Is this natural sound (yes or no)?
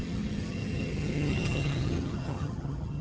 no